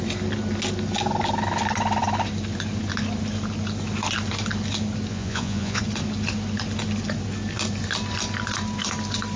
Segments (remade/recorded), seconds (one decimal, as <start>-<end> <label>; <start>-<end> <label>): 0.0-5.1 recorded; 5.1-5.8 remade; 5.8-9.4 recorded